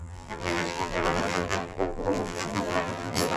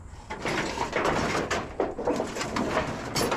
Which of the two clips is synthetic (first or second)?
first